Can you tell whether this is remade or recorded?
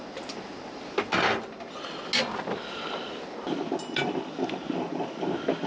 recorded